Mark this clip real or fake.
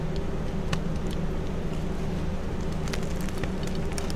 real